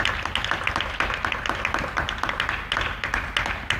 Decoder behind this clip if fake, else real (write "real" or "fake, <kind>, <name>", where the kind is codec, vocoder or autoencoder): real